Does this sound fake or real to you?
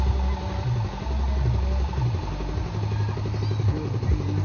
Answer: real